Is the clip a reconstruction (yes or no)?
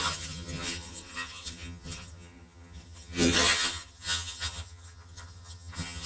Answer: yes